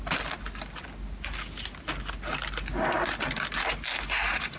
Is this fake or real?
real